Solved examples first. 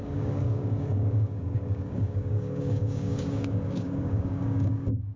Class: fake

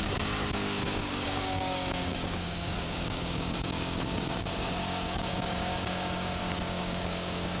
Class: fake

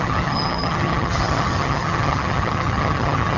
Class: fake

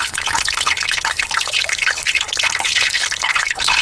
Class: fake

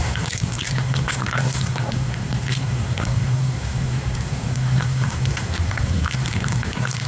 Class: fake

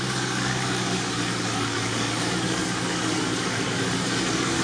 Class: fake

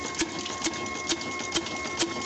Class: real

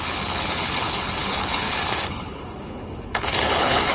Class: fake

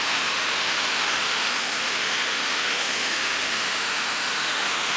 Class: fake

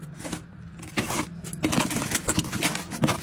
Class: real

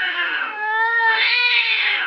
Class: fake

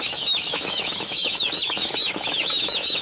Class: fake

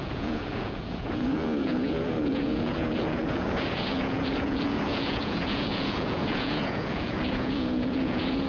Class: fake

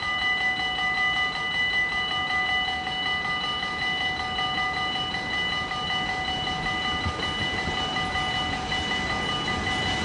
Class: real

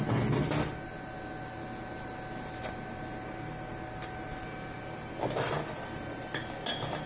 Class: real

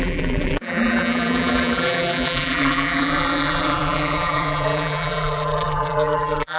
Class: fake